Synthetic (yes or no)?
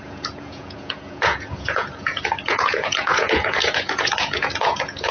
yes